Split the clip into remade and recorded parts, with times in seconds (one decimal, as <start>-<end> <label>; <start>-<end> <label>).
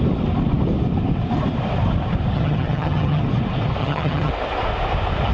0.0-2.3 recorded; 2.3-3.2 remade; 3.2-3.8 recorded; 3.8-4.3 remade; 4.3-5.3 recorded